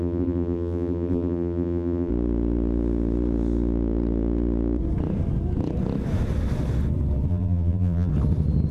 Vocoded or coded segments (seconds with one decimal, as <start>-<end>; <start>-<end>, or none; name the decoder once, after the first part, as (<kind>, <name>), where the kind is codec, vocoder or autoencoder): 0.0-2.1 (vocoder, BigVGAN v2); 7.3-8.1